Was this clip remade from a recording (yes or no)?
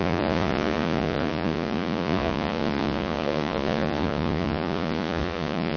yes